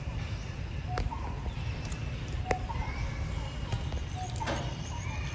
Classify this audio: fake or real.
real